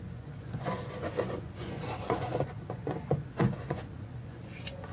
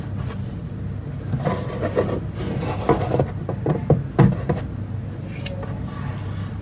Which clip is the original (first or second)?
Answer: second